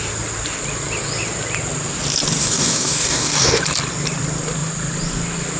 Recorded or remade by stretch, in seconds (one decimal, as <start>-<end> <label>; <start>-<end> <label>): 0.0-2.4 recorded; 2.4-3.6 remade; 3.6-5.6 recorded